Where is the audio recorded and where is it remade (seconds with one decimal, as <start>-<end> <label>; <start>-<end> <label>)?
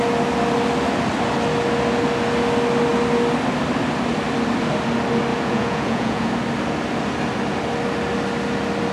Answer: 0.0-5.3 recorded; 5.3-6.3 remade; 6.3-8.9 recorded